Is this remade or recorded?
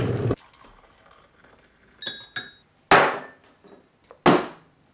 recorded